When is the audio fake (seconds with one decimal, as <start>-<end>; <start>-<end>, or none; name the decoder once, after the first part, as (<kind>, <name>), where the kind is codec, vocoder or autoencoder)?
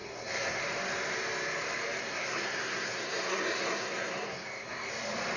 0.0-0.6 (codec, SNAC); 2.0-4.9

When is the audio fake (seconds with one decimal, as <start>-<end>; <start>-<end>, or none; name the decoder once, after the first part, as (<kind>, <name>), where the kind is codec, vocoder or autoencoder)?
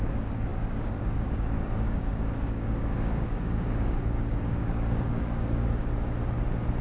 0.0-5.8 (codec, DAC)